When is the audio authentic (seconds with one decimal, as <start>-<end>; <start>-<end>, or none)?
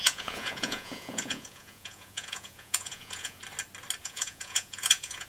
3.4-4.0